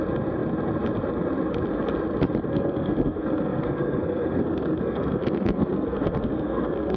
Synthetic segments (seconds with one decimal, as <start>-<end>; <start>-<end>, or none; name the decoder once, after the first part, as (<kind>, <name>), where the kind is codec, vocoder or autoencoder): 2.5-7.0 (codec, SNAC)